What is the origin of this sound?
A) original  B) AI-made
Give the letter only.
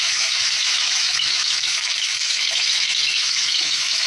B